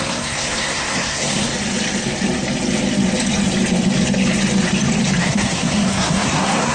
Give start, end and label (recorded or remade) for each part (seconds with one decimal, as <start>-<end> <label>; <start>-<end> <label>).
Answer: 0.0-1.5 remade; 1.5-5.2 recorded; 5.2-6.7 remade